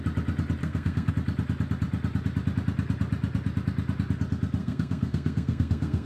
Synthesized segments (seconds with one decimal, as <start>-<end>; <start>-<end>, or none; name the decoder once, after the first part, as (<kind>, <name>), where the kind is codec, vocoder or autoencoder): 0.6-1.1 (codec, SNAC); 4.6-6.1